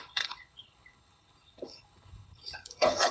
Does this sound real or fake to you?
fake